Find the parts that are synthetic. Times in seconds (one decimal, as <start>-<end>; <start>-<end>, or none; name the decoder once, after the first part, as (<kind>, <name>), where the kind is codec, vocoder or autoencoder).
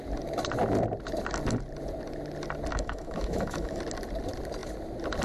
2.7-3.8 (autoencoder, DAC-VAE)